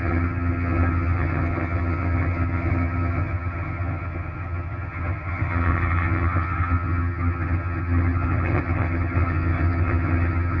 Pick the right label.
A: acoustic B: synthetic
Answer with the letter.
B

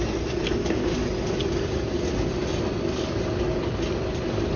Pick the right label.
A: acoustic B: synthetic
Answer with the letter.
A